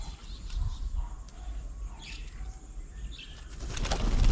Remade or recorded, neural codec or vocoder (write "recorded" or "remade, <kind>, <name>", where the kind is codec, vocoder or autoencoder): recorded